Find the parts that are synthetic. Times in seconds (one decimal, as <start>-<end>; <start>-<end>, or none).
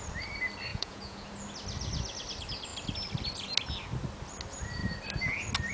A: 0.7-1.4